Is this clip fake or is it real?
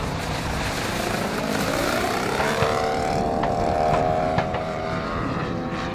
fake